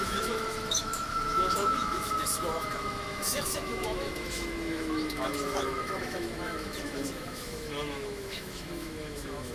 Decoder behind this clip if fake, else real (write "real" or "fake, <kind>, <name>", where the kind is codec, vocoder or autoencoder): fake, autoencoder, DAC-VAE